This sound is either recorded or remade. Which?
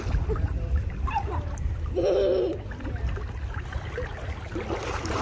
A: recorded